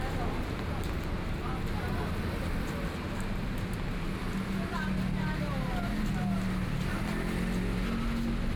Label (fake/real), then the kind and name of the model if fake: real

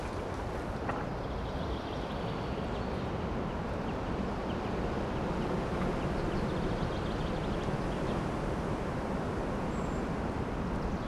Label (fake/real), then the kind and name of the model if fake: real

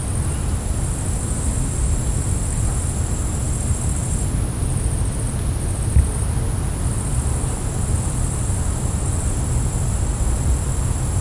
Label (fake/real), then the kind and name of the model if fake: real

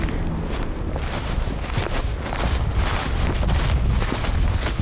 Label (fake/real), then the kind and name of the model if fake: real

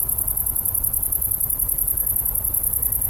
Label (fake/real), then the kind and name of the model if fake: real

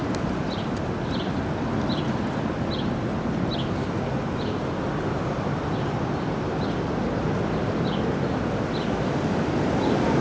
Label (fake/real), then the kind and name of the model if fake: real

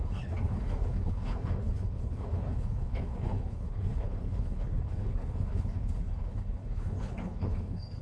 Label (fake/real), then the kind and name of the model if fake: fake, codec, HILCodec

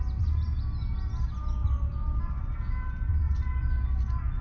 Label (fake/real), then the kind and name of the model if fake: real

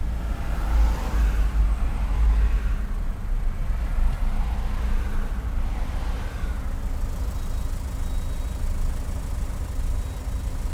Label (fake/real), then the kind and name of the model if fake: real